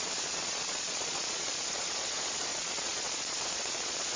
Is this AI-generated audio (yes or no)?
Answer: yes